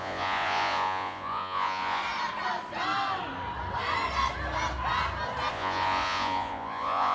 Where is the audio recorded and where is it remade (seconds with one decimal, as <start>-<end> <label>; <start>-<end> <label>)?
0.0-2.0 remade; 2.0-5.5 recorded; 5.5-7.1 remade

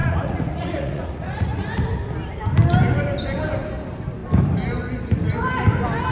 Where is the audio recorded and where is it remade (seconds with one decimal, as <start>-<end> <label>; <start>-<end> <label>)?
0.0-1.8 remade; 1.8-6.1 recorded

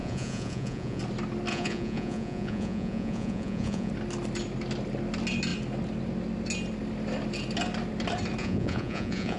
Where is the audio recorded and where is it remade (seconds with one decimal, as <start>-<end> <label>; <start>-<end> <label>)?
0.0-1.0 remade; 1.0-1.5 recorded; 1.5-3.9 remade; 3.9-8.4 recorded; 8.4-9.4 remade

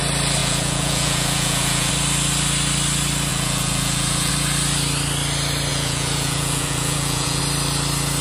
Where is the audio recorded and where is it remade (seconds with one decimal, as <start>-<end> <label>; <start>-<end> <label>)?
0.0-0.4 recorded; 0.4-1.9 remade; 1.9-3.3 recorded; 3.3-4.3 remade; 4.3-5.7 recorded; 5.7-7.4 remade; 7.4-8.2 recorded

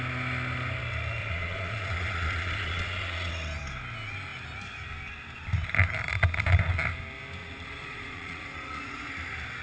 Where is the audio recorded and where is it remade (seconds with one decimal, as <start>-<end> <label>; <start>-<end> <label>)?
0.0-1.2 recorded; 1.2-3.3 remade; 3.3-7.4 recorded; 7.4-9.1 remade; 9.1-9.6 recorded